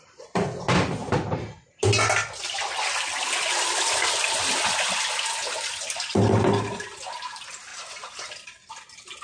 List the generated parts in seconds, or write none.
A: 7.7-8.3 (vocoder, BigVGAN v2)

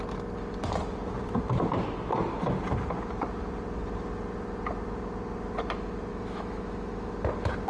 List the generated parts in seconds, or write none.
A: 6.1-7.1 (autoencoder, DAC-VAE)

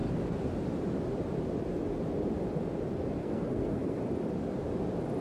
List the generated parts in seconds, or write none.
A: 3.2-4.0 (codec, SNAC)

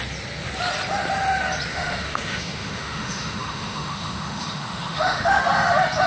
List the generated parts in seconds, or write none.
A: 1.7-5.4 (autoencoder, DAC-VAE)

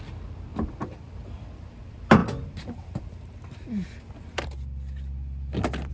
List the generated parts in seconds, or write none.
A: 0.5-1.5 (vocoder, BigVGAN v2); 2.2-5.9

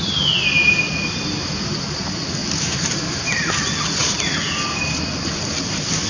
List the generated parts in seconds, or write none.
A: 2.4-2.9 (vocoder, BigVGAN v2)